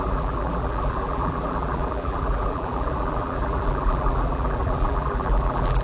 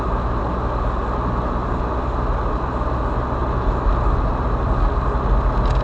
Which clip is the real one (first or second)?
second